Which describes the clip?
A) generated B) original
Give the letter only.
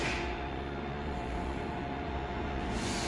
A